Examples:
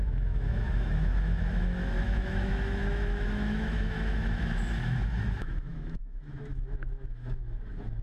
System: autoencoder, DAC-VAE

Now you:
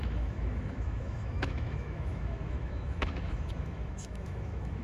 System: autoencoder, DAC-VAE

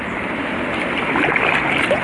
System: none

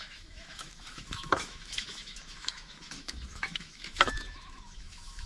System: autoencoder, DAC-VAE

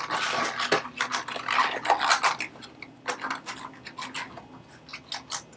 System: none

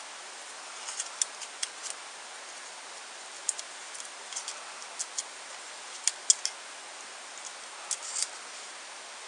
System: none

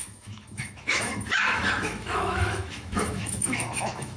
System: autoencoder, DAC-VAE